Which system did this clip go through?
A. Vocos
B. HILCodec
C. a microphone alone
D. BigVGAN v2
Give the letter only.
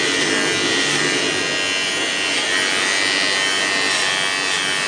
C